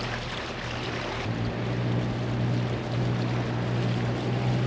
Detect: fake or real real